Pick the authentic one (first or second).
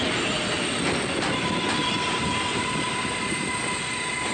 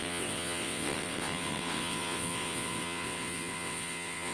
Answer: first